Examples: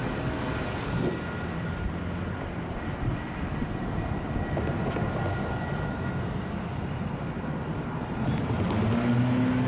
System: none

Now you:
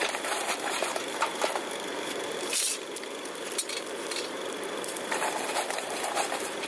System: vocoder, BigVGAN v2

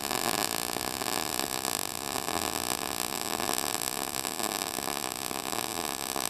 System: none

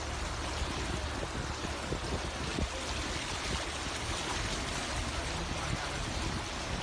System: none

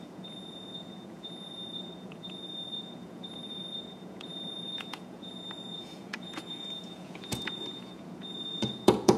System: vocoder, Vocos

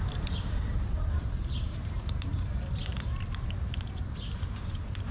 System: vocoder, BigVGAN v2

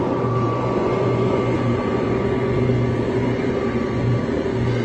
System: vocoder, Vocos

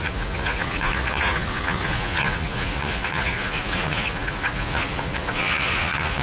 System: vocoder, Vocos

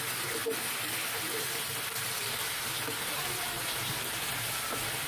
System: none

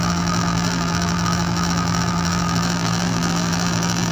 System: vocoder, BigVGAN v2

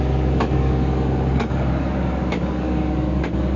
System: codec, DAC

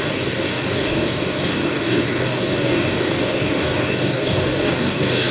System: codec, DAC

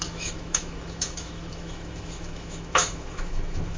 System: autoencoder, DAC-VAE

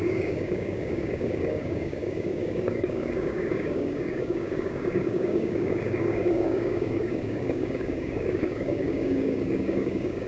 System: codec, DAC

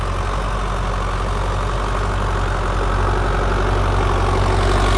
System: none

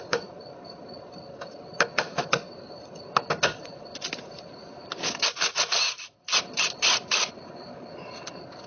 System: none